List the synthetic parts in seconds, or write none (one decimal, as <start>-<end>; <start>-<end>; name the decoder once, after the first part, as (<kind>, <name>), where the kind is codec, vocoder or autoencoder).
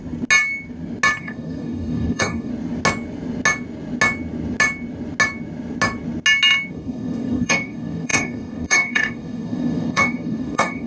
1.2-2.5 (codec, DAC); 6.7-10.9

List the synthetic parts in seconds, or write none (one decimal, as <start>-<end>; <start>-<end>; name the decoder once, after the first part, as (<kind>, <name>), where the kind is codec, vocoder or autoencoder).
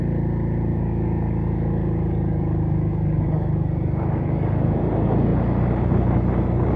0.7-4.8 (codec, DAC)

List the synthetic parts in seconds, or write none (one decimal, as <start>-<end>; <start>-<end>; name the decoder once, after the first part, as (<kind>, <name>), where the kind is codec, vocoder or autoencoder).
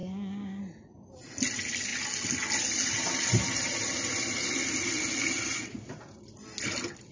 0.0-0.6 (codec, DAC)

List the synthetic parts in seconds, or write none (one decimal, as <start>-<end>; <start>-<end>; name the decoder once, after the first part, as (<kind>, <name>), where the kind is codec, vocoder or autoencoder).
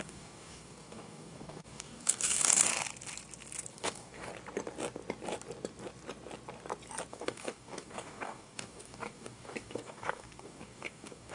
0.0-2.7 (codec, DAC); 3.7-4.3; 7.1-11.3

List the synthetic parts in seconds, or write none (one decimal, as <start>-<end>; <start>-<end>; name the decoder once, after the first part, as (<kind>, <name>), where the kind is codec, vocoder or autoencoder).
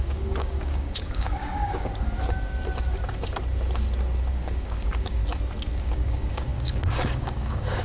0.0-1.9 (codec, DAC); 4.3-5.2; 5.8-7.8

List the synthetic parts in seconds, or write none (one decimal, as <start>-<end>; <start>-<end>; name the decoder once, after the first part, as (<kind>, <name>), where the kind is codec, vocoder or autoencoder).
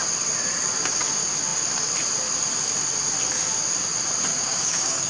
4.3-5.1 (codec, DAC)